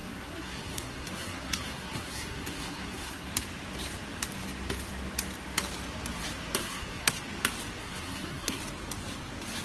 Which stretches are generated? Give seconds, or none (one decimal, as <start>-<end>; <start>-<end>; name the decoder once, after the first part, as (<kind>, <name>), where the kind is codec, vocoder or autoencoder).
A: 0.0-3.3 (codec, SNAC); 6.6-7.1; 7.8-8.6